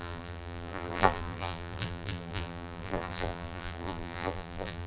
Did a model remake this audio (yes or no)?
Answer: yes